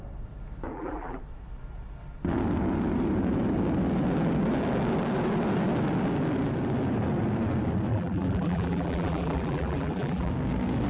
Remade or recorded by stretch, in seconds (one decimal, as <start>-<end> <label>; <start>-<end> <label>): 0.0-0.7 recorded; 0.7-1.2 remade; 1.2-7.9 recorded; 7.9-10.3 remade; 10.3-10.9 recorded